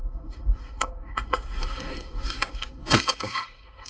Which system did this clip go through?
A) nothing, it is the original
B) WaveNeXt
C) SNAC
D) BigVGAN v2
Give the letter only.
C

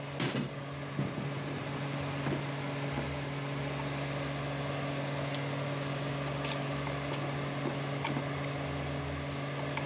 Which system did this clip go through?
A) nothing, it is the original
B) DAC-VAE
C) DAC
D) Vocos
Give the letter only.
A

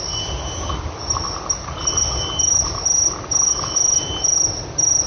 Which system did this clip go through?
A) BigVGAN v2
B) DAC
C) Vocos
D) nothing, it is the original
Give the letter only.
D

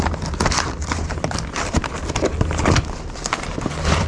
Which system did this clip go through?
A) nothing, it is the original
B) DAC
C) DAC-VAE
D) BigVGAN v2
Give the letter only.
A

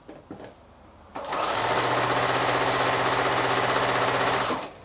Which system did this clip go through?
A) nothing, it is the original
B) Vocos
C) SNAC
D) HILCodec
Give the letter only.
A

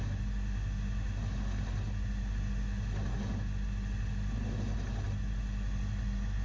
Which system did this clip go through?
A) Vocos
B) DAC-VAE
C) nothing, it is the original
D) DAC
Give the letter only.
C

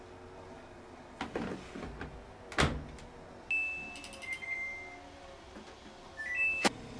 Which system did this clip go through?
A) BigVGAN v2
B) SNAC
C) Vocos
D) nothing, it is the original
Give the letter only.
D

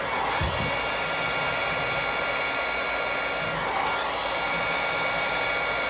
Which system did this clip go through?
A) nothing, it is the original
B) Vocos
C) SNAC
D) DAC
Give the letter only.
A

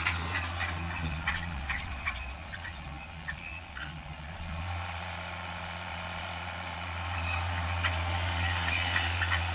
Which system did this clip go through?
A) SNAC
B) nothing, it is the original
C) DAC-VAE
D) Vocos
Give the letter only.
D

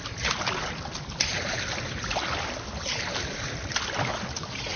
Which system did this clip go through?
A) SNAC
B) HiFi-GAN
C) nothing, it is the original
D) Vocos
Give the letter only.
C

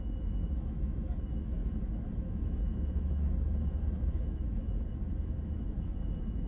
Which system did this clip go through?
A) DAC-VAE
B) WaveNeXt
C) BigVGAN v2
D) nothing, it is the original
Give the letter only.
A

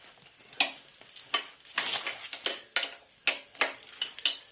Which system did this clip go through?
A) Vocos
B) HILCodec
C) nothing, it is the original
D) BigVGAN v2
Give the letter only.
C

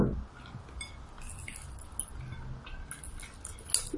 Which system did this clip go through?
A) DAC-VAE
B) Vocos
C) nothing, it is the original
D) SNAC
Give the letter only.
C